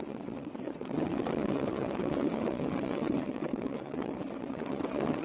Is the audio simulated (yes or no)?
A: yes